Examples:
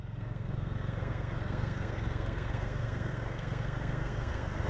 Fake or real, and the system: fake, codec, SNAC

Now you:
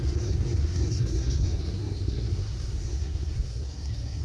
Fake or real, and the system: fake, codec, SNAC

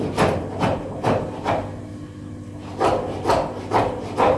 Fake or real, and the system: real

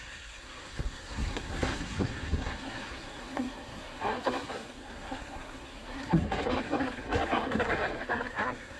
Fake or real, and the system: fake, codec, SNAC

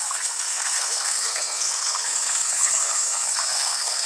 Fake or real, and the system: fake, codec, SNAC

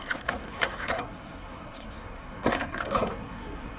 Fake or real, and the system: fake, codec, SNAC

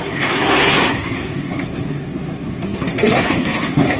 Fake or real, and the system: fake, codec, SNAC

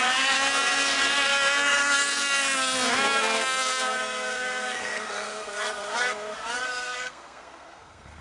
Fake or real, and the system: fake, codec, SNAC